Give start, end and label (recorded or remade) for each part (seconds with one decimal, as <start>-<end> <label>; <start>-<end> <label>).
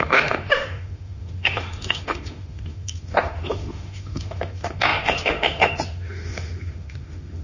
0.0-7.4 remade